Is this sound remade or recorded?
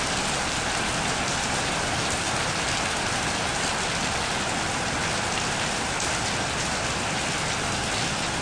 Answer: recorded